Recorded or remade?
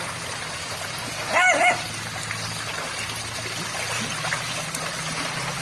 recorded